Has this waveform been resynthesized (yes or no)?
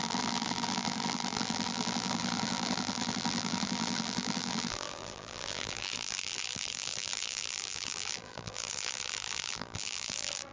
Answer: yes